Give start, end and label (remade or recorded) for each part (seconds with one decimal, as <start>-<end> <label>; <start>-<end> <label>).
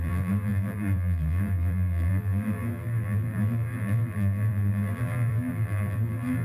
0.0-6.4 remade